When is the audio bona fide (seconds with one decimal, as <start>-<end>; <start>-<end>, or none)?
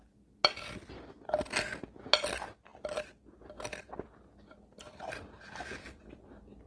0.0-6.7